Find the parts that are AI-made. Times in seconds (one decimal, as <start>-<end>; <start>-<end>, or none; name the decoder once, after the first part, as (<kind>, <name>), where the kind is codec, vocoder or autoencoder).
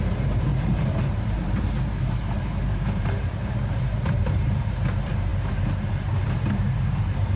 0.0-7.4 (vocoder, BigVGAN v2)